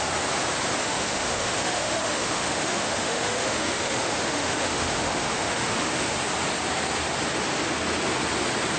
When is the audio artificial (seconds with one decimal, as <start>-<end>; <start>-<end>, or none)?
0.8-6.1